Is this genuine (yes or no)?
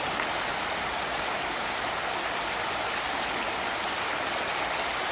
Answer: yes